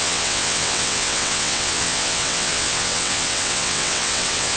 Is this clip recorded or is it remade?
remade